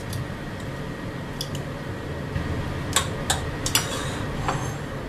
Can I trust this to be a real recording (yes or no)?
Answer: yes